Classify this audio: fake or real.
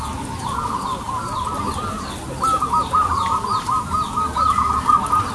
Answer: real